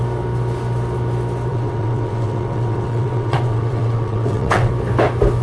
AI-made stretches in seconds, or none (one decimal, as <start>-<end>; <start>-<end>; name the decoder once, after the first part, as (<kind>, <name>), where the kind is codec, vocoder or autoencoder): 1.5-4.7 (vocoder, WaveNeXt)